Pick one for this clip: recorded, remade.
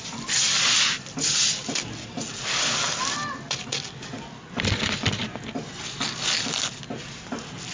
recorded